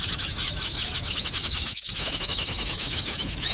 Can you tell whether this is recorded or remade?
remade